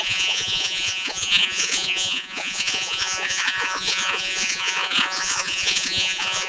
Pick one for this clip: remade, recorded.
remade